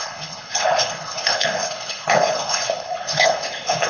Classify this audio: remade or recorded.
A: remade